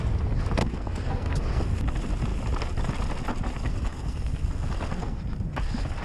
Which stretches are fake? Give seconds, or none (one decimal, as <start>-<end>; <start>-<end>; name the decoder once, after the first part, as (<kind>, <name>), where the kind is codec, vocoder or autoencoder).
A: 0.6-1.7 (codec, SNAC); 3.7-5.2